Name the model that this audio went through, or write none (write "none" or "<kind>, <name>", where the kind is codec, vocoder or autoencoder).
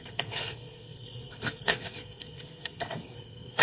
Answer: codec, SNAC